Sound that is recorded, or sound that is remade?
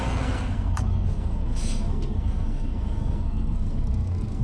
remade